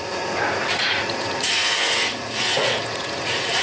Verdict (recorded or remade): remade